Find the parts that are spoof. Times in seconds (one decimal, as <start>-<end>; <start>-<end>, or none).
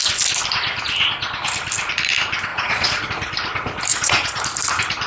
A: 2.5-3.1; 3.9-4.4